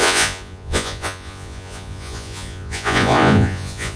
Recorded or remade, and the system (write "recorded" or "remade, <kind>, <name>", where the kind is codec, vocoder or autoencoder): remade, vocoder, Vocos